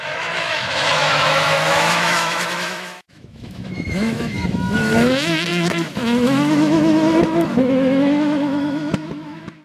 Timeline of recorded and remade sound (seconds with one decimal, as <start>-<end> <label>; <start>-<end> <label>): 0.0-9.6 remade